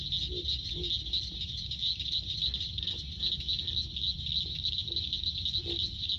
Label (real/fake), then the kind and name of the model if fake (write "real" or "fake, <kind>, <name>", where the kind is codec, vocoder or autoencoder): real